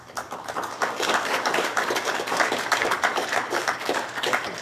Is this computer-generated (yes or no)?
yes